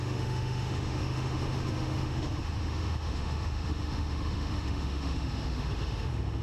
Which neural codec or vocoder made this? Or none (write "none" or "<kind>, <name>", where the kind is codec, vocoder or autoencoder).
autoencoder, DAC-VAE